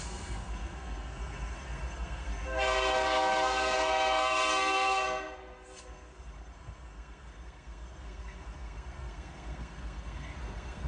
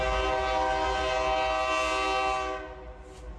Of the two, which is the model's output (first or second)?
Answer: first